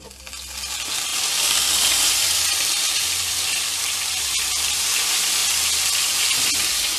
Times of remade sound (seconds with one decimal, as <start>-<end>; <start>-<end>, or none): 1.1-4.3